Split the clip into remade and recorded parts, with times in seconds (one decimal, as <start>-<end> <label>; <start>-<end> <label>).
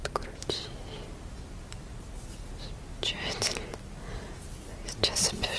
0.0-5.6 recorded